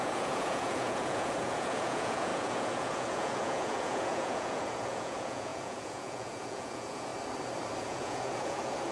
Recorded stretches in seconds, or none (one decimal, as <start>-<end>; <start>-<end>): 7.1-7.8